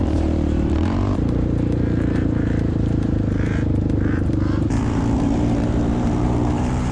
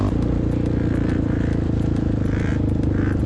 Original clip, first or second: second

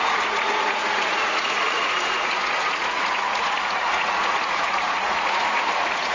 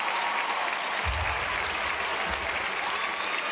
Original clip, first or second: second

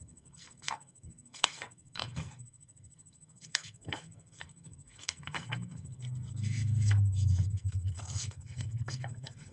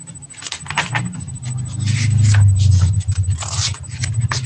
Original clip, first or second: second